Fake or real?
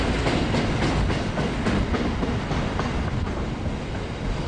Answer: real